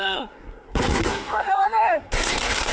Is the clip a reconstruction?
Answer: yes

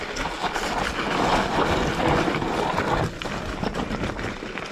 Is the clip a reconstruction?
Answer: no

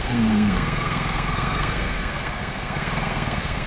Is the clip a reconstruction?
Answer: yes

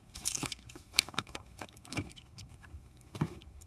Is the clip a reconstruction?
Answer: yes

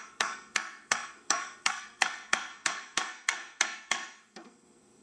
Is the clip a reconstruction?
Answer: yes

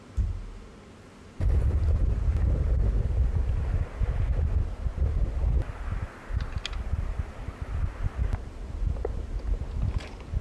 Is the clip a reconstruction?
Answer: no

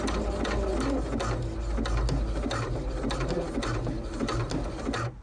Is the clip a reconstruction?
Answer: no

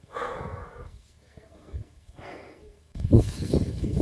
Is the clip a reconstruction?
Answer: yes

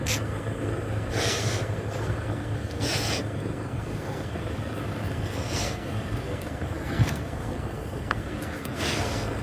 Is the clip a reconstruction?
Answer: yes